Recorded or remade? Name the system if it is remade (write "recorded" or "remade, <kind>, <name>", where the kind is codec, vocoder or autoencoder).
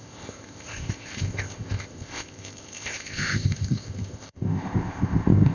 remade, codec, ZipCodec